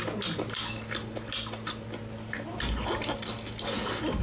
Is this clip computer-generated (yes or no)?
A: no